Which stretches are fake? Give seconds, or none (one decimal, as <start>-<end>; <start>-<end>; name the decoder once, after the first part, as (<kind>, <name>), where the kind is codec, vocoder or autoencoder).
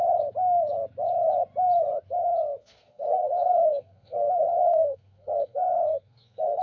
2.6-6.6 (codec, SNAC)